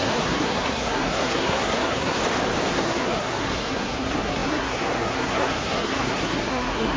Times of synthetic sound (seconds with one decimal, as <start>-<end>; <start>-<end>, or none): 0.0-2.2; 2.7-7.0